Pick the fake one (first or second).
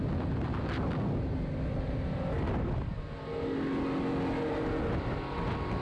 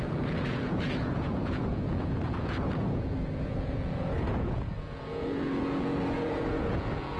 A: second